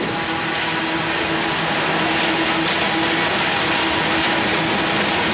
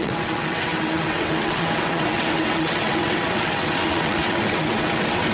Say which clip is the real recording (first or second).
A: first